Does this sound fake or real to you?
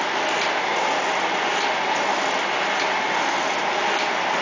real